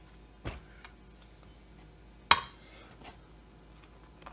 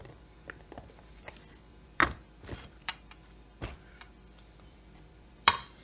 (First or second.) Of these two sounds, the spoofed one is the second